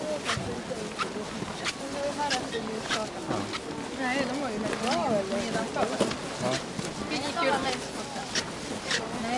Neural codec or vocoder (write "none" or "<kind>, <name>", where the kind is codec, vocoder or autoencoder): none